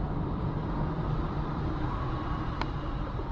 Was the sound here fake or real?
fake